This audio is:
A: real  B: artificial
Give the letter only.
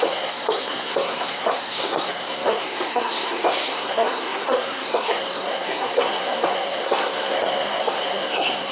B